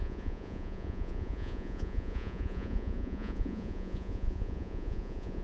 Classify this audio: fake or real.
fake